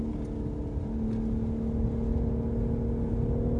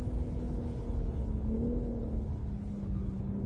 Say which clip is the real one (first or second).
first